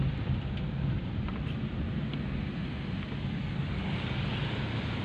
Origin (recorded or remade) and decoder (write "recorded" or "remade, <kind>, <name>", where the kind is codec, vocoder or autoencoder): recorded